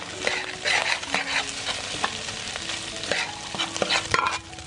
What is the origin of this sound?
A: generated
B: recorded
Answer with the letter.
A